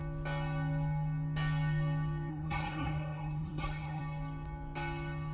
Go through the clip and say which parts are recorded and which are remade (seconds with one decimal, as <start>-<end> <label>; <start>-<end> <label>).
0.0-2.3 recorded; 2.3-4.0 remade; 4.0-5.3 recorded